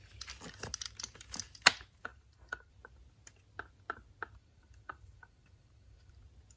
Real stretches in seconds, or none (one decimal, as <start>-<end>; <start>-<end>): 0.0-2.1; 2.7-4.4; 6.1-6.6